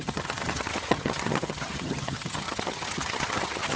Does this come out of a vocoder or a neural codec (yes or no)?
yes